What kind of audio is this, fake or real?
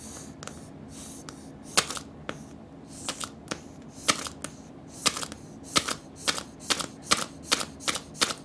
real